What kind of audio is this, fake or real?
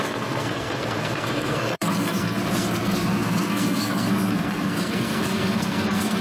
fake